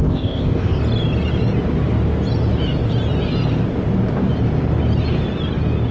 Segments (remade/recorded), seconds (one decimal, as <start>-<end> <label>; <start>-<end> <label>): 0.0-0.8 remade; 0.8-5.9 recorded